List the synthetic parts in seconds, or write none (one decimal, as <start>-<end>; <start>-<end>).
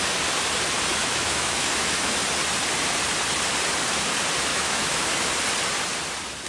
0.9-2.2; 4.5-5.1